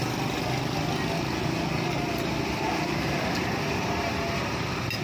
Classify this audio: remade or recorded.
recorded